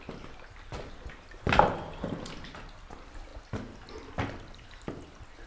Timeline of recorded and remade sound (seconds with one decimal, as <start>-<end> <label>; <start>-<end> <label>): 0.0-5.5 recorded